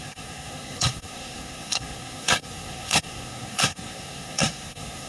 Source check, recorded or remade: remade